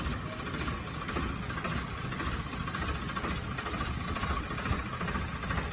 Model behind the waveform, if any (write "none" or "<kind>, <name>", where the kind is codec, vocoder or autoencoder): none